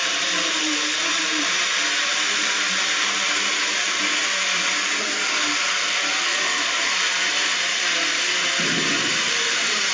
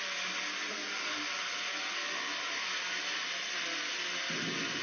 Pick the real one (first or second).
second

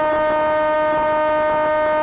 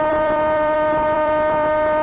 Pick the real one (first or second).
first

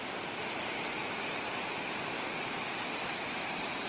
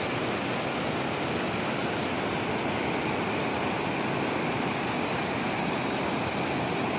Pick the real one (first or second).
second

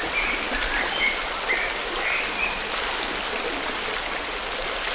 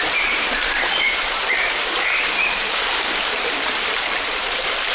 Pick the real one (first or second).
first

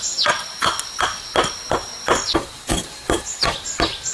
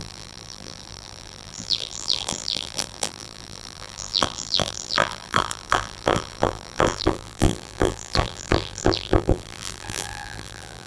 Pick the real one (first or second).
first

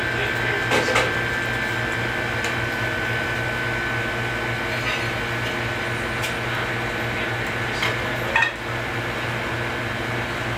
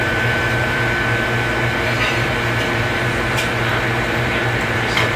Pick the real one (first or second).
first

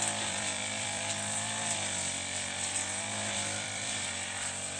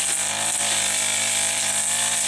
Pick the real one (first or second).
second